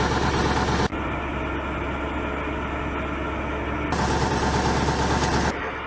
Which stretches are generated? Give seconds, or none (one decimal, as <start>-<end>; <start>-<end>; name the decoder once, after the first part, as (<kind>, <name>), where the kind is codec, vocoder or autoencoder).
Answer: none